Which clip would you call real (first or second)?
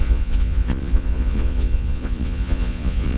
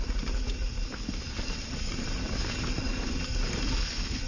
second